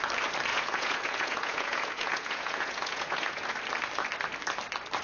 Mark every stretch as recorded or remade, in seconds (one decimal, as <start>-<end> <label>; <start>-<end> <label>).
0.0-0.5 recorded; 0.5-3.5 remade; 3.5-5.0 recorded